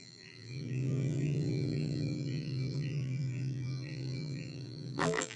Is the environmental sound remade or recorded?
remade